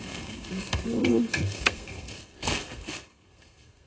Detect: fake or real fake